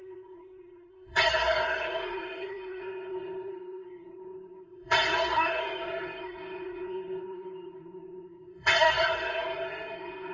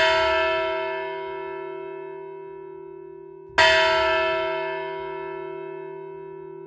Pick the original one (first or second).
second